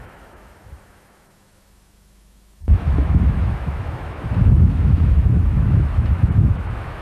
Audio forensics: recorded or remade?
remade